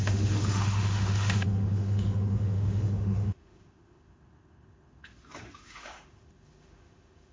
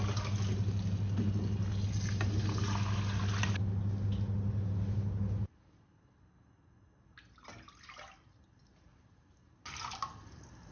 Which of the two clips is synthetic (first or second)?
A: first